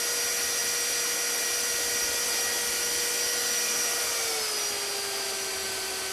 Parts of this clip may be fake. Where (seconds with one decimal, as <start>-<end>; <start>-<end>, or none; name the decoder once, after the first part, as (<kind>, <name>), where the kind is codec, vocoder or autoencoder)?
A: none